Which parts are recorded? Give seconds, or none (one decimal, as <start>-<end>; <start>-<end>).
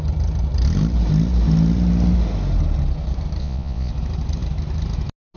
0.0-3.4; 3.9-5.4